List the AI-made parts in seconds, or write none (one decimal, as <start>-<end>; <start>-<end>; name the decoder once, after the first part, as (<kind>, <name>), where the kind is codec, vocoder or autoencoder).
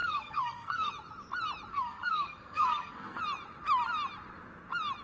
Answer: 0.0-0.9 (codec, SNAC); 1.7-3.2